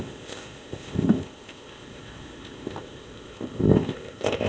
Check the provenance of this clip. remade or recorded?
remade